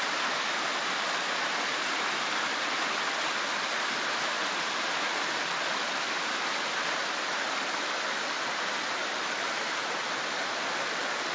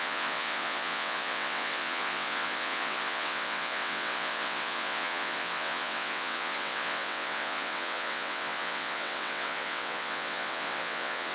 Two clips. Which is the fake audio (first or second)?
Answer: second